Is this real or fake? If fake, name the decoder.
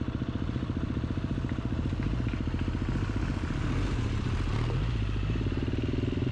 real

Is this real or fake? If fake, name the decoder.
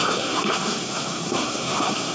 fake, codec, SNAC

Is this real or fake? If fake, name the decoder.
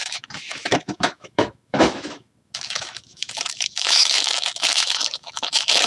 fake, autoencoder, DAC-VAE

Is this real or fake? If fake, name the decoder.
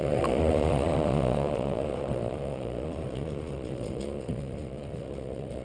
fake, vocoder, Vocos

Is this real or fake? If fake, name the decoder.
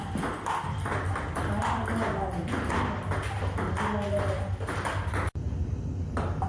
real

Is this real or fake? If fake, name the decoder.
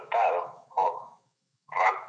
fake, autoencoder, DAC-VAE